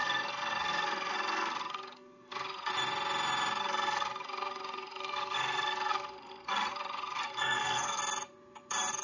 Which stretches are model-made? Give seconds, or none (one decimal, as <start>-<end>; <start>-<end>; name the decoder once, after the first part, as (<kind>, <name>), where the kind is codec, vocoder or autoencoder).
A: 0.0-2.7 (codec, SNAC); 3.6-8.0